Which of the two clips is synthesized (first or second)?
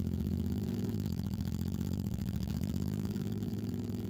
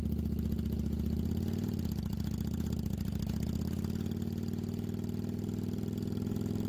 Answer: first